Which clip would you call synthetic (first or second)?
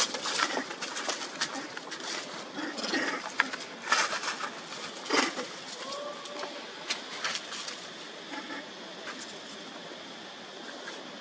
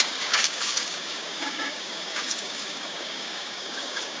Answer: second